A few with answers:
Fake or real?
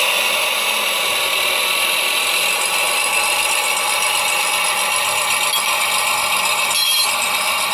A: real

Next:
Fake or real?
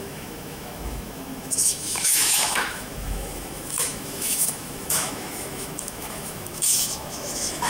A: fake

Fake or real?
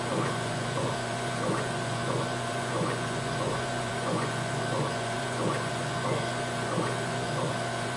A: fake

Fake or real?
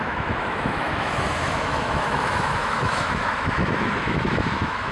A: fake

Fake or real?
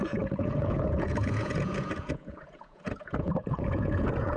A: fake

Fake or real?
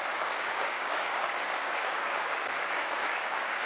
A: fake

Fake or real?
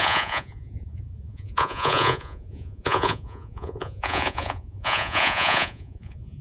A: fake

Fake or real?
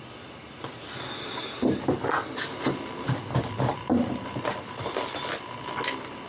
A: real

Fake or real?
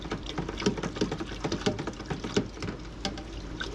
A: real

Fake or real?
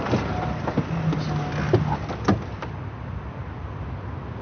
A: real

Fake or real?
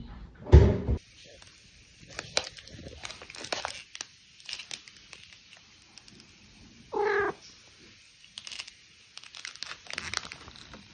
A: real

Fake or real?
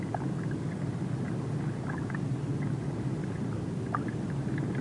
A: real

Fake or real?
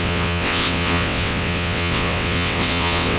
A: fake